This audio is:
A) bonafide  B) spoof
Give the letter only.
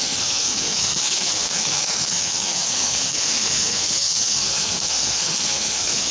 B